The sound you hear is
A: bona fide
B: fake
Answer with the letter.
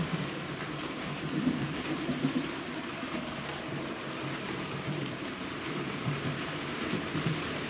B